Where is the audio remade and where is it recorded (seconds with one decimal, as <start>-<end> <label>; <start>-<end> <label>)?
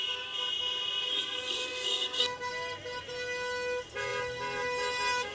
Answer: 0.0-1.1 recorded; 1.1-2.5 remade; 2.5-5.3 recorded